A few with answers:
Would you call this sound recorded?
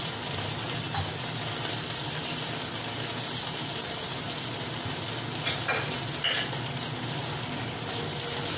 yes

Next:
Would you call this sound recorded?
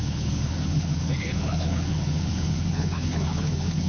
no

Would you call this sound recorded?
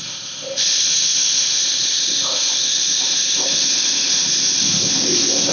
no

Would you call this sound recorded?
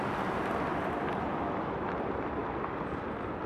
yes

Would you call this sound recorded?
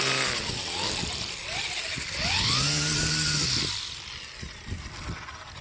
yes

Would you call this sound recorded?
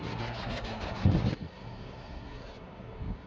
no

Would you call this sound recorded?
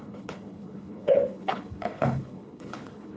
no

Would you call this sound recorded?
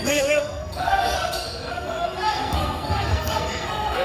no